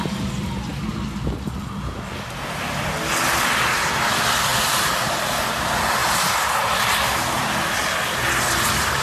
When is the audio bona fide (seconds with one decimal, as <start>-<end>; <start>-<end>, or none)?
0.0-4.5; 5.1-9.0